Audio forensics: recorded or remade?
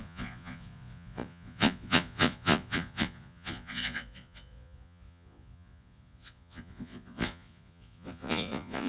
remade